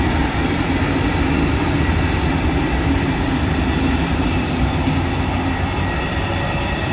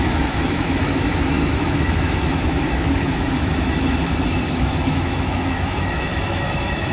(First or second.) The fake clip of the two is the second